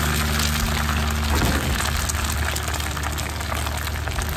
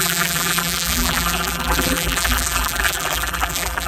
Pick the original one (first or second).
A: first